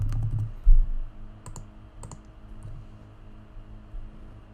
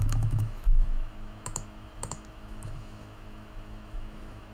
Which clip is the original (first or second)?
first